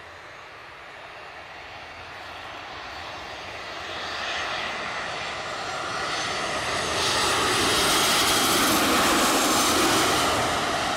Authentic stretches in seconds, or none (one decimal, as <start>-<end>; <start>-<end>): 0.0-11.0